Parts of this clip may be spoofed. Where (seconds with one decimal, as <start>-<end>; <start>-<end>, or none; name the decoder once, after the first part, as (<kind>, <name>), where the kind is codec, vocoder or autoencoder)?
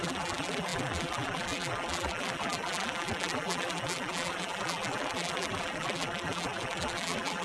0.0-7.4 (vocoder, BigVGAN v2)